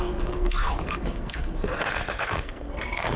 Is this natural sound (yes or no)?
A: no